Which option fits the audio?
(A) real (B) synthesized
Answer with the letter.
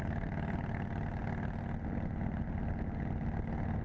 A